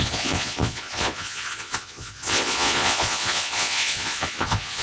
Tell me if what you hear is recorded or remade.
remade